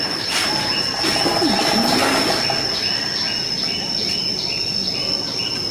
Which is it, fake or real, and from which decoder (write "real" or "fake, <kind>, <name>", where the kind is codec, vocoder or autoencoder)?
real